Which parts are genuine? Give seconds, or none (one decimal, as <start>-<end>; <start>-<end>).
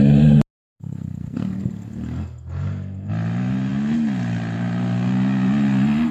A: 0.0-0.7; 3.1-6.1